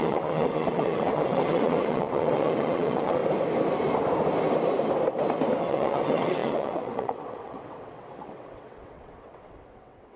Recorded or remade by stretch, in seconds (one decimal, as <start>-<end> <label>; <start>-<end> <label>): 0.0-3.2 remade; 3.2-5.6 recorded; 5.6-10.2 remade